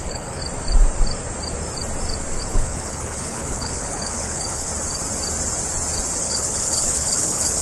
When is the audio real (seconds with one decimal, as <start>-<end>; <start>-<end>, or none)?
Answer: 0.4-2.4; 4.7-6.2